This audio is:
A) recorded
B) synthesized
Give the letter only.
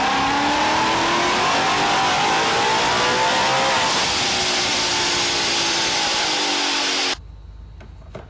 A